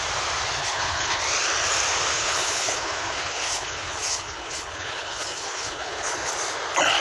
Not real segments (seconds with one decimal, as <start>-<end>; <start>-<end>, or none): 0.6-1.2; 2.1-6.3